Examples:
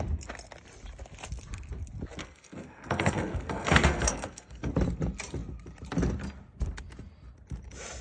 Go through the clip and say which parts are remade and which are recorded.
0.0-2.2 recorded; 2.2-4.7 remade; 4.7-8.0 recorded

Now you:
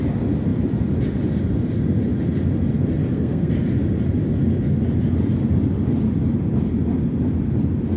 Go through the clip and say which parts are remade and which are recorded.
0.0-3.0 recorded; 3.0-3.5 remade; 3.5-8.0 recorded